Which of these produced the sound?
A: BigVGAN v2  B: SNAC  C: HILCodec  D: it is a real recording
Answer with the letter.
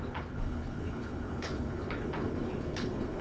C